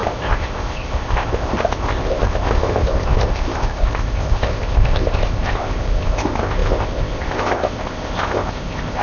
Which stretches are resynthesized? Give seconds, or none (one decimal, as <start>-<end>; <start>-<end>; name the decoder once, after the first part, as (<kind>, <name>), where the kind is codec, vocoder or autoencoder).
0.0-9.0 (codec, ZipCodec)